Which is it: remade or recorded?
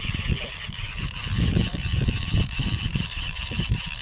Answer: remade